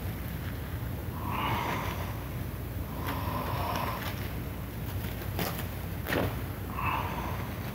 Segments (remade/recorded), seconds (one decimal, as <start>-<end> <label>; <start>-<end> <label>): 0.0-7.7 recorded